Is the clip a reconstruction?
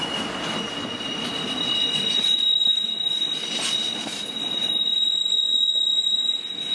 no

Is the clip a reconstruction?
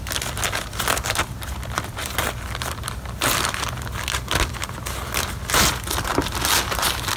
no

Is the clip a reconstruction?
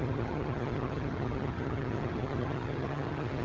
yes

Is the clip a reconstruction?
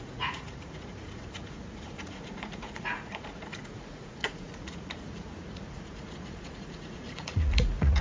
yes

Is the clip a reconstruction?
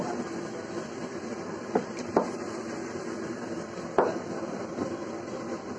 yes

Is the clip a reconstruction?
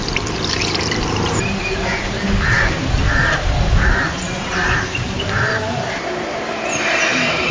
yes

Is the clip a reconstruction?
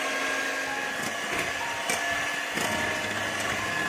no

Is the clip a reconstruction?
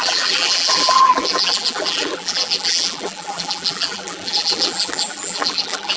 yes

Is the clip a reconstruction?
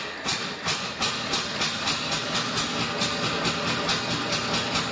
no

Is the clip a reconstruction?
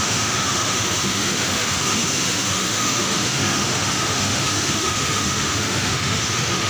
yes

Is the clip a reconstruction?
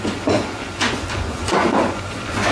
yes